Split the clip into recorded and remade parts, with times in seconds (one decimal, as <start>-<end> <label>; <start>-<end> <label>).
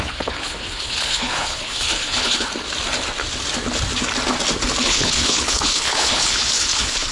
0.0-2.5 remade; 2.5-4.8 recorded; 4.8-7.1 remade